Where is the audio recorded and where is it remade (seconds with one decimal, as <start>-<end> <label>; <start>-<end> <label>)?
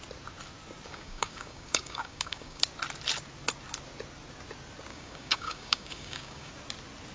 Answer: 0.0-0.9 recorded; 0.9-2.6 remade; 2.6-4.9 recorded; 4.9-6.5 remade; 6.5-7.1 recorded